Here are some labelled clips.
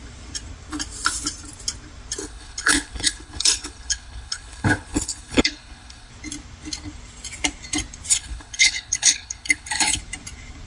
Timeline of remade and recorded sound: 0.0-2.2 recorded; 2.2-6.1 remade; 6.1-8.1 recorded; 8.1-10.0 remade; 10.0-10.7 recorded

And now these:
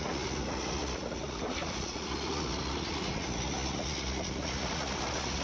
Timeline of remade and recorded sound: 0.0-5.4 remade

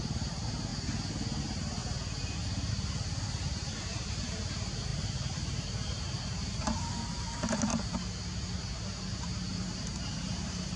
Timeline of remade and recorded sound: 0.0-0.7 remade; 0.7-1.4 recorded; 1.4-1.8 remade; 1.8-2.7 recorded; 2.7-7.7 remade; 7.7-8.6 recorded; 8.6-10.8 remade